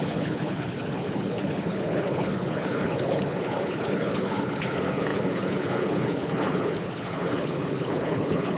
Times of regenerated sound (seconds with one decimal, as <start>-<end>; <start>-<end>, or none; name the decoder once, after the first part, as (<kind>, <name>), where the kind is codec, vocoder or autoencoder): 0.0-8.6 (codec, HILCodec)